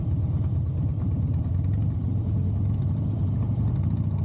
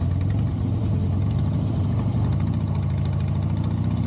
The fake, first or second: first